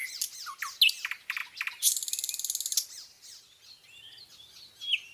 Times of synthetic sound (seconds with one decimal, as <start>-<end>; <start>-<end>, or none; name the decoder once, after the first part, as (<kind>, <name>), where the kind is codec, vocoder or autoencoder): none